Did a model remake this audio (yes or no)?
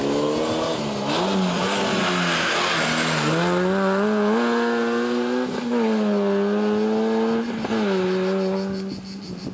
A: no